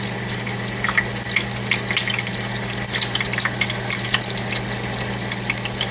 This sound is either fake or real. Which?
fake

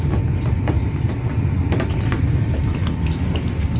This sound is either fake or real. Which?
real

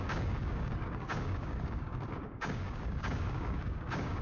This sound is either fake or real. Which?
fake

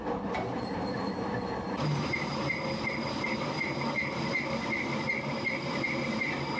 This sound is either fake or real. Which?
fake